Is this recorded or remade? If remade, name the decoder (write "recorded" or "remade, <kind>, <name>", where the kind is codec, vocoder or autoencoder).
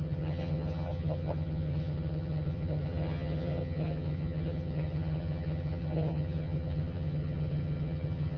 remade, vocoder, HiFi-GAN